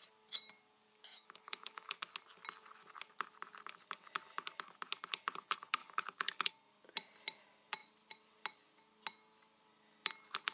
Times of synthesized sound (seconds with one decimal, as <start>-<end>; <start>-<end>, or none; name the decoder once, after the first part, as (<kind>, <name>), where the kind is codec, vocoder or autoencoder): 0.9-2.0 (codec, DAC); 5.8-6.5